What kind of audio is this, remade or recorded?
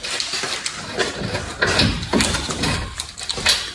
recorded